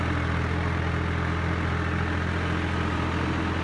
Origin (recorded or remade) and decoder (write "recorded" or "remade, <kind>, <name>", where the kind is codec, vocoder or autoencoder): recorded